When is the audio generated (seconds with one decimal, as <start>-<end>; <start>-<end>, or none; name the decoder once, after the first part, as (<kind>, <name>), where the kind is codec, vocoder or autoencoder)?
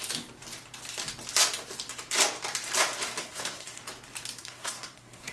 3.2-3.8 (codec, SNAC); 4.4-5.3